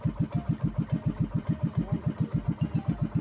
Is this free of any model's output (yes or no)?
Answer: yes